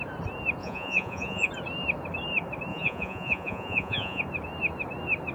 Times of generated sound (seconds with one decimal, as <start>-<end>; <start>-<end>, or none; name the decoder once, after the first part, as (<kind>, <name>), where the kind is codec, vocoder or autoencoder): 0.6-1.5 (vocoder, Vocos); 2.7-4.2